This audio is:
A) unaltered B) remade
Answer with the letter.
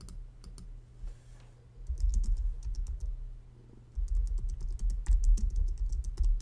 A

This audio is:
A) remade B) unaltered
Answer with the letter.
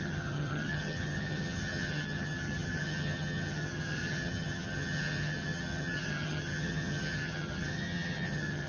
A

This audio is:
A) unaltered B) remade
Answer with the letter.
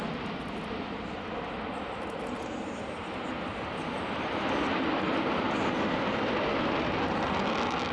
A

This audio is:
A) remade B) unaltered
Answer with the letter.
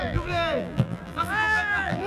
A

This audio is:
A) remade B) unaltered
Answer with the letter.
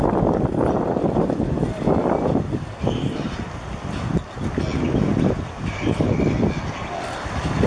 B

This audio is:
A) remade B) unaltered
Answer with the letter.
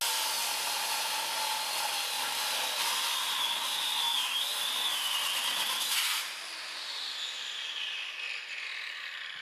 B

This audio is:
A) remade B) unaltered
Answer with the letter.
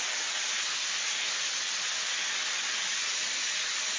B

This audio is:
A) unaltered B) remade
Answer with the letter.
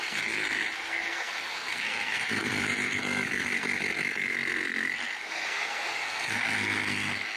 B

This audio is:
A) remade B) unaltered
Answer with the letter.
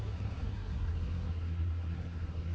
A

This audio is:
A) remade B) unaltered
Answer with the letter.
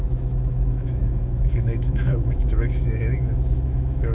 A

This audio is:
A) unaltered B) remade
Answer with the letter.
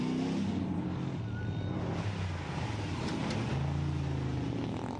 A